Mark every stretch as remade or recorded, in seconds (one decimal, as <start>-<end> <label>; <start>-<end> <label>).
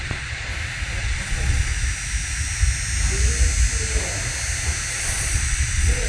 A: 0.0-0.5 remade; 0.5-1.0 recorded; 1.0-1.7 remade; 1.7-4.9 recorded; 4.9-6.1 remade